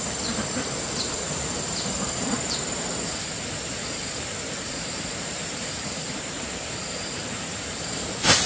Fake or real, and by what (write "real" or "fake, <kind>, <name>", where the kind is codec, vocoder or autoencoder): fake, vocoder, BigVGAN v2